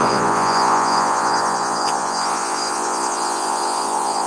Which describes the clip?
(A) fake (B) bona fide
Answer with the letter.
A